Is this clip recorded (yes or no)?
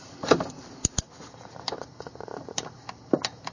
no